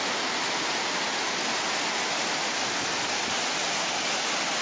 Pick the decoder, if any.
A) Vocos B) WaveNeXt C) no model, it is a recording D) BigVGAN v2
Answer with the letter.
C